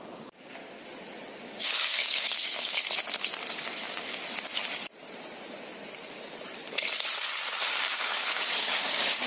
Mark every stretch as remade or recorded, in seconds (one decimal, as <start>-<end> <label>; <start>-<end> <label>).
0.0-0.6 remade; 0.6-1.4 recorded; 1.4-2.8 remade; 2.8-3.5 recorded; 3.5-4.2 remade; 4.2-7.7 recorded; 7.7-9.3 remade